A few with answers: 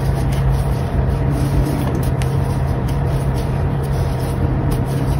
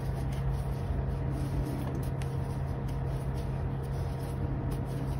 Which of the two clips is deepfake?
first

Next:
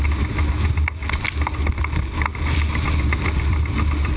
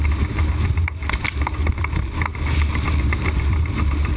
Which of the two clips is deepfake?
second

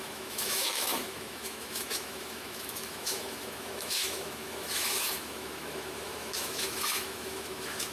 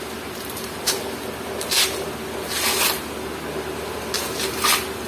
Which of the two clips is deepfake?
first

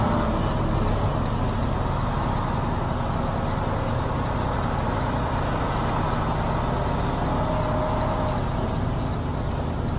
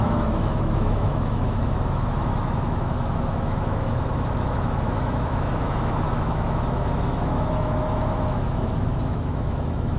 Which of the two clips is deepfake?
second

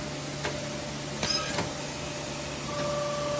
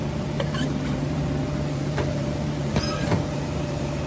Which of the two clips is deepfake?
second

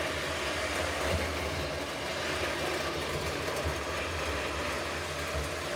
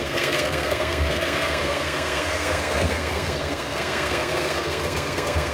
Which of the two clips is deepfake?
second